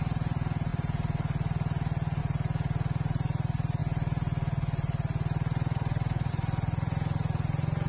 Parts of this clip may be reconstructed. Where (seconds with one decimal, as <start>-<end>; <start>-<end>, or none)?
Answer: none